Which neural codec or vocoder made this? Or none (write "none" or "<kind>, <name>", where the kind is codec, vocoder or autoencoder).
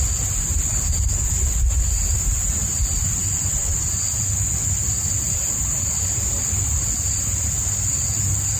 none